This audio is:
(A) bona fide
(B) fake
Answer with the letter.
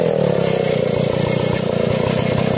A